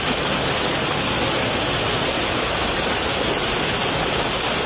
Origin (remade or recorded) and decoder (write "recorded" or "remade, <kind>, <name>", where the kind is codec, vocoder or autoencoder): recorded